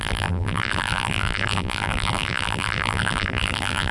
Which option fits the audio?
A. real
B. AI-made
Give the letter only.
B